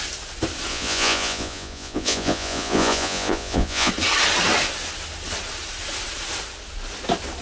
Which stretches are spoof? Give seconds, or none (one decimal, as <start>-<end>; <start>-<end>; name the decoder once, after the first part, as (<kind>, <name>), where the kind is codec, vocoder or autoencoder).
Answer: 0.7-3.9 (vocoder, Vocos)